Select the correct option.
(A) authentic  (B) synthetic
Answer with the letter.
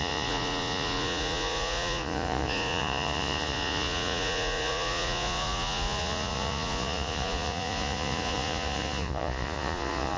B